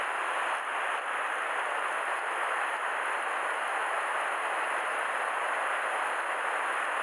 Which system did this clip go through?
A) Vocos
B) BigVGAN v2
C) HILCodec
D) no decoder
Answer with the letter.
D